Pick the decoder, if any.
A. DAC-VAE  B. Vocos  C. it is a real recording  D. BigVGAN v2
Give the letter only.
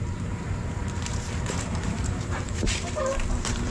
D